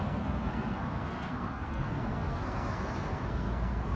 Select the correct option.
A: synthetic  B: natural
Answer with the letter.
A